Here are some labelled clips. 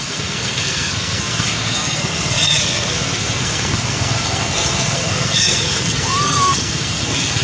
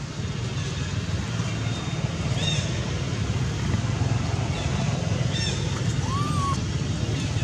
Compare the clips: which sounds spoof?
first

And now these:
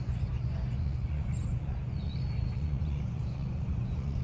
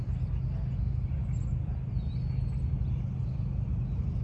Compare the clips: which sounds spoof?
first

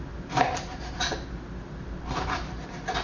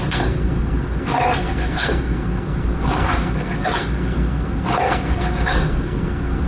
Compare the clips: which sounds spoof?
second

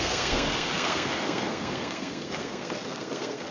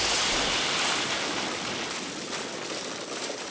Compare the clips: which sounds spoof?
first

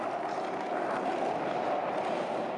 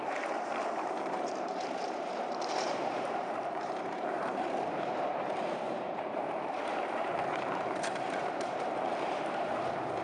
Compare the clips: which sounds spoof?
second